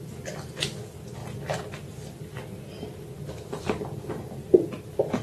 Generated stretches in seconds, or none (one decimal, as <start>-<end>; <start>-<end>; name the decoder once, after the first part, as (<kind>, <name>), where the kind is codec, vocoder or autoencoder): 0.0-1.2 (vocoder, BigVGAN v2); 4.3-5.2